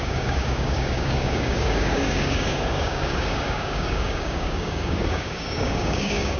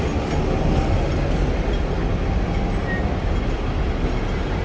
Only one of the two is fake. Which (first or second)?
first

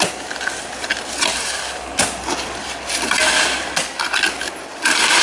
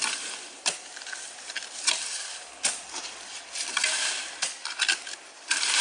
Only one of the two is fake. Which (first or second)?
second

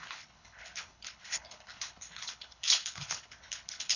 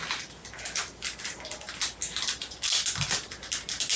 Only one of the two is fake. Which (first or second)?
first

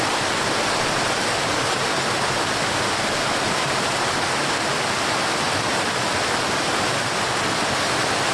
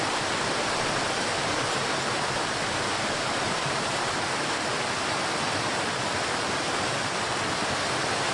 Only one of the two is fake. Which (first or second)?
second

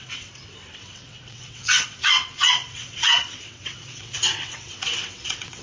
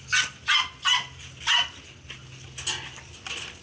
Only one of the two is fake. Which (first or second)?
first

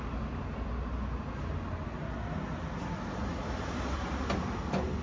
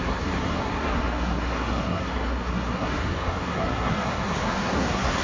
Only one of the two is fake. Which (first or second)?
second